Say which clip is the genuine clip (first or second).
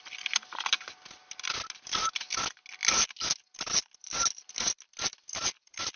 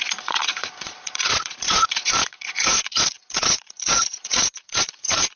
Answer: first